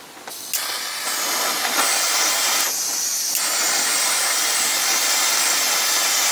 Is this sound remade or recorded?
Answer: recorded